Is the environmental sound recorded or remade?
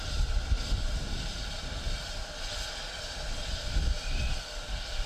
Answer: recorded